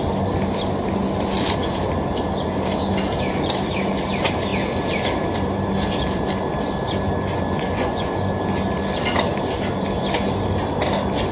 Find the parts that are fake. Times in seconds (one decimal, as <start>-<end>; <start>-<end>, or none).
7.3-8.1